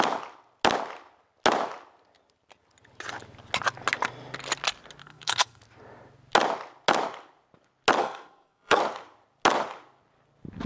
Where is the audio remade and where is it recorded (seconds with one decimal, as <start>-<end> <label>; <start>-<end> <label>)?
0.0-5.0 recorded; 5.0-5.6 remade; 5.6-8.0 recorded; 8.0-8.8 remade; 8.8-10.7 recorded